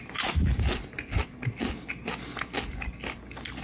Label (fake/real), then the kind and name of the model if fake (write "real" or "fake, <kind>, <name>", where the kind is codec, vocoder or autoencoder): real